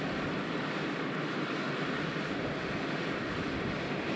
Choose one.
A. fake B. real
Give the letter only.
B